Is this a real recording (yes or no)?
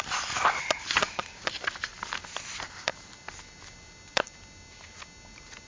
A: yes